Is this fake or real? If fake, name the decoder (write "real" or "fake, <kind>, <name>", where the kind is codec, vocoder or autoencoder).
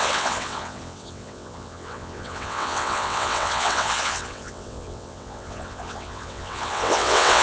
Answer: fake, vocoder, WaveNeXt